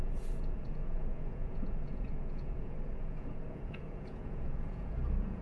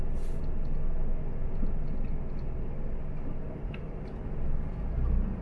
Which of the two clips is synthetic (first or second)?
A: first